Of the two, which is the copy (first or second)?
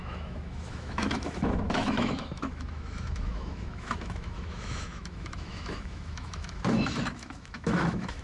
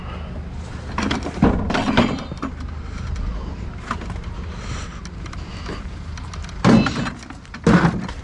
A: first